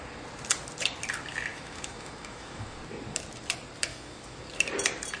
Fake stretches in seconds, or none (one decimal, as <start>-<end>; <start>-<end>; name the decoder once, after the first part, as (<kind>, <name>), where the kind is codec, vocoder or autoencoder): 1.5-2.8 (autoencoder, DAC-VAE); 3.9-4.4